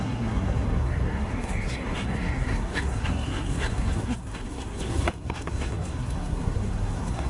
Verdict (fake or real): fake